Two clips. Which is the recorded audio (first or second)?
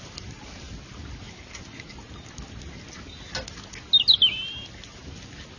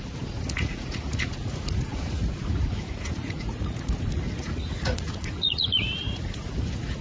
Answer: first